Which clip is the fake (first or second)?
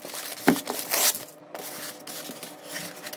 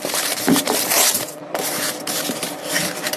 second